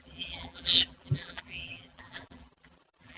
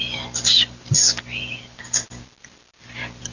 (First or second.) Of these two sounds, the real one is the second